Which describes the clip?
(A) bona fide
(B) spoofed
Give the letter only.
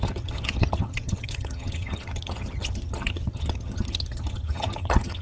B